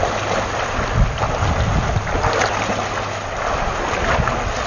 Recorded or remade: recorded